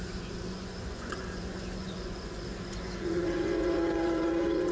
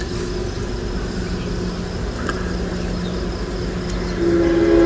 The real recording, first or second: second